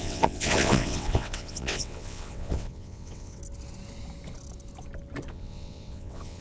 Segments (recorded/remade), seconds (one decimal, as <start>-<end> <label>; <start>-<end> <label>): 0.0-3.4 remade; 3.4-5.3 recorded; 5.3-6.4 remade